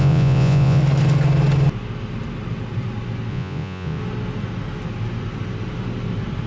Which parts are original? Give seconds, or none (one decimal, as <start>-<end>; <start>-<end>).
0.8-3.3; 4.0-6.5

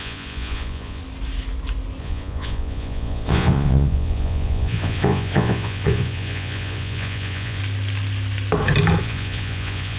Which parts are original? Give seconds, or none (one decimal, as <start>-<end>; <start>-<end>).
1.0-2.0; 7.6-9.0

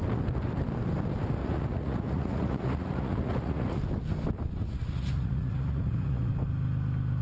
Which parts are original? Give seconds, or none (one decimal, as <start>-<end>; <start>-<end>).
0.0-1.4; 3.8-4.6; 6.3-7.2

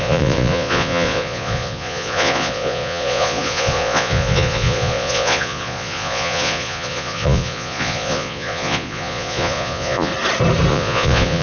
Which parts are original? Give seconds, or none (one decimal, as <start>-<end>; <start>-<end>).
10.1-10.7

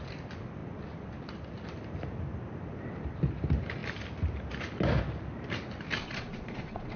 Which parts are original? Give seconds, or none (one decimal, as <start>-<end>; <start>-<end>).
0.0-6.0

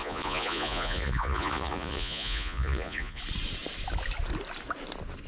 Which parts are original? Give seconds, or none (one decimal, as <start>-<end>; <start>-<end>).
3.2-5.3

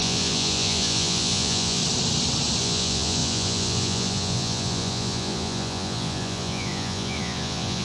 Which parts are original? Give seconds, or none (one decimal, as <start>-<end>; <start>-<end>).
1.8-2.6